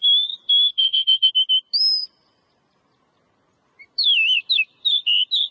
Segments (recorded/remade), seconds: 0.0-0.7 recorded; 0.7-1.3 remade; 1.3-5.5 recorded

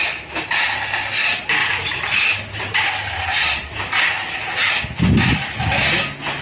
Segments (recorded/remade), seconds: 0.0-1.6 recorded; 1.6-2.9 remade; 2.9-6.4 recorded

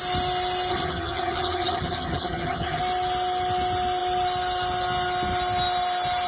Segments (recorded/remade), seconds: 0.0-0.7 recorded; 0.7-2.8 remade; 2.8-6.3 recorded

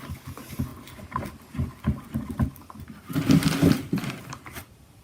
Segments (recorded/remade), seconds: 0.0-5.0 recorded